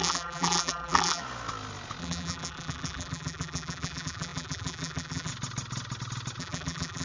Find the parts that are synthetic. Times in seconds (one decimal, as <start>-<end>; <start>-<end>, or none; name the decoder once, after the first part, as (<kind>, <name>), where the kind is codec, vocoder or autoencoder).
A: 0.0-1.2 (vocoder, BigVGAN v2); 2.0-5.3; 6.4-7.0